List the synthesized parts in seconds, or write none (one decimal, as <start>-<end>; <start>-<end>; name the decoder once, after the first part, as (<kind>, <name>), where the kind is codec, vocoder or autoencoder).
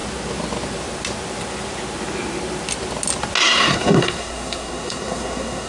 3.4-5.7 (codec, SNAC)